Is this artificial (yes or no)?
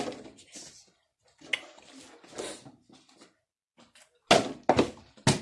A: no